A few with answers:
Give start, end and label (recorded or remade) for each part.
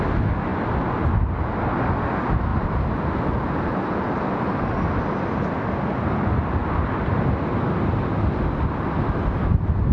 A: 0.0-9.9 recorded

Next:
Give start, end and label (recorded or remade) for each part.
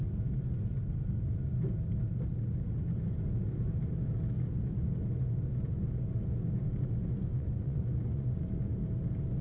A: 0.0-7.3 recorded; 7.3-8.5 remade; 8.5-9.4 recorded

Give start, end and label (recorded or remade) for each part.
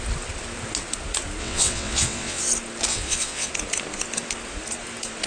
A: 0.0-1.4 recorded; 1.4-2.4 remade; 2.4-2.9 recorded; 2.9-3.5 remade; 3.5-5.3 recorded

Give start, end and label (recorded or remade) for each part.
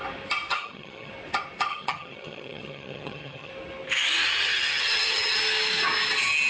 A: 0.0-0.5 recorded; 0.5-1.1 remade; 1.1-1.7 recorded; 1.7-3.5 remade; 3.5-4.2 recorded; 4.2-5.4 remade; 5.4-6.5 recorded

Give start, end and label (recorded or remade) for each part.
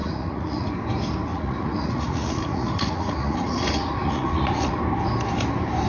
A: 0.0-0.7 remade; 0.7-1.3 recorded; 1.3-4.8 remade; 4.8-5.9 recorded